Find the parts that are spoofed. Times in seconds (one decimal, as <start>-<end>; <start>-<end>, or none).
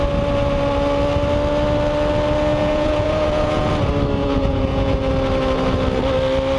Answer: 2.5-3.7; 4.2-5.1